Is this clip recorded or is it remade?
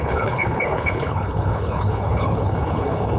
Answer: remade